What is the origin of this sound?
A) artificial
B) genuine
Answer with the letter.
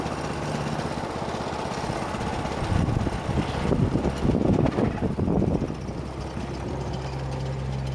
B